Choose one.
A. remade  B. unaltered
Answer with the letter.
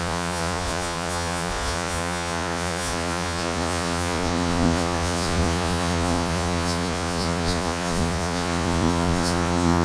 A